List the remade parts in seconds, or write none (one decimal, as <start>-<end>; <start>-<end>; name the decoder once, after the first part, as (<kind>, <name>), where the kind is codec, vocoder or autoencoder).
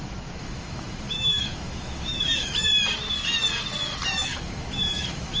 0.0-2.7 (autoencoder, DAC-VAE); 4.1-5.4